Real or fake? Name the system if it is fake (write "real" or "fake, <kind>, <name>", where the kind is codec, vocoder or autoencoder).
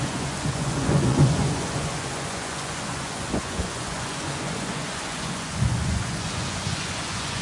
fake, vocoder, Vocos